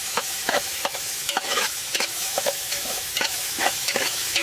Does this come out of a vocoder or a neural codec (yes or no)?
yes